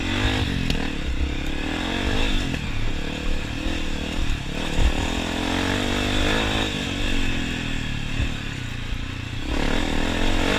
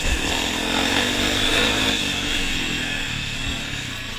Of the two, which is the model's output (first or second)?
second